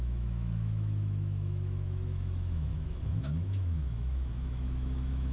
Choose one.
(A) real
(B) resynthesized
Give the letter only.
B